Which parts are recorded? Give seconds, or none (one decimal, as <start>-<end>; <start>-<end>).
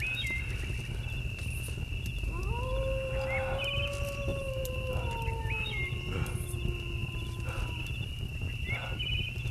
0.0-4.3; 4.9-7.0